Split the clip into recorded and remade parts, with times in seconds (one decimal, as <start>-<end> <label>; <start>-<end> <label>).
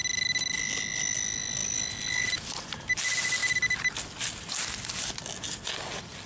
0.0-6.3 recorded